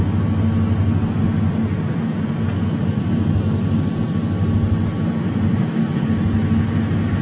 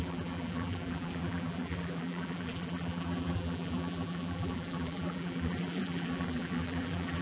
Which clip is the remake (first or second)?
second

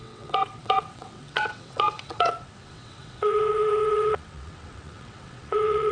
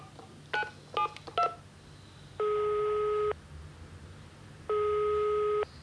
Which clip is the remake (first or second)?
first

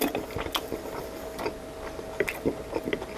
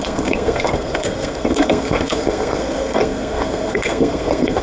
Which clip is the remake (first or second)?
second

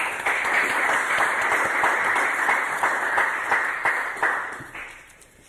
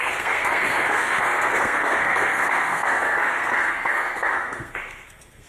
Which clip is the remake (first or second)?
second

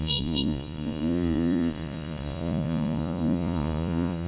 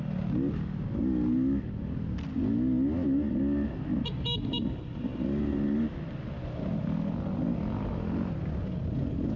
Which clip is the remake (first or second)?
first